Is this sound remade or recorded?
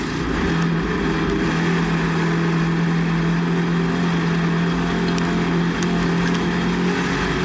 recorded